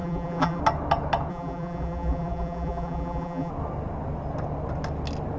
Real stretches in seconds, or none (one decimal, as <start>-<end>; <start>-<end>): 0.6-1.3; 3.5-5.4